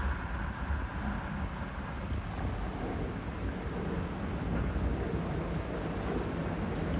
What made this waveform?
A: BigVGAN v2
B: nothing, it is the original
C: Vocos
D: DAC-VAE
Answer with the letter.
B